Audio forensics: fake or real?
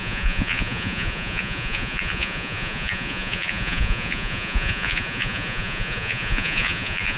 fake